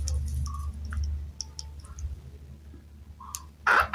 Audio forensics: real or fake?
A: real